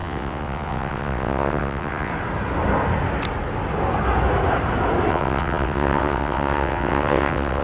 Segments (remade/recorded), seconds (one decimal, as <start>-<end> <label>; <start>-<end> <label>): 0.0-2.1 remade; 2.1-5.1 recorded; 5.1-7.6 remade